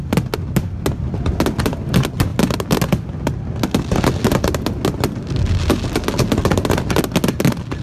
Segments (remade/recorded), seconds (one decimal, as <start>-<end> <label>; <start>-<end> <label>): 0.0-7.8 recorded